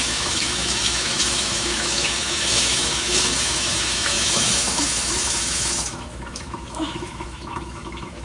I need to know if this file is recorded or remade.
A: remade